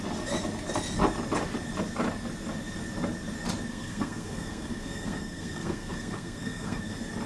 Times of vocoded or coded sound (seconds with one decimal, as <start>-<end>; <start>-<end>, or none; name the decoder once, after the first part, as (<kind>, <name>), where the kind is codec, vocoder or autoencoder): 3.7-6.8 (codec, SNAC)